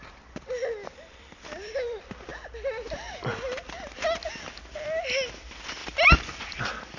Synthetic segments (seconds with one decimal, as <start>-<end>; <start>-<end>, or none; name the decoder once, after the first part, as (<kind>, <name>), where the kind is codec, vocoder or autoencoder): 0.0-2.3 (vocoder, BigVGAN v2); 5.3-7.0